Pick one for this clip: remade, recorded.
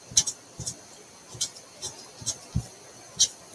recorded